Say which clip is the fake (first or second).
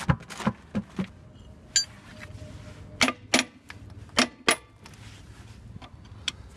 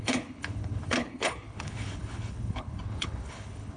second